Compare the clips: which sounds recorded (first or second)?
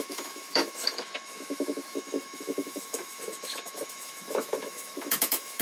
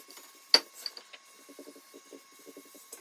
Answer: second